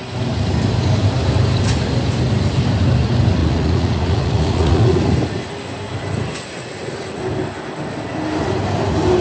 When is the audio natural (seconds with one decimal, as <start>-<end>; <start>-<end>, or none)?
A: 0.0-3.4; 5.0-6.6; 7.2-9.2